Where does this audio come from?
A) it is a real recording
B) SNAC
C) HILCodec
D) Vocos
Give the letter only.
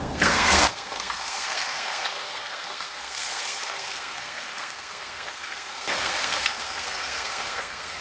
B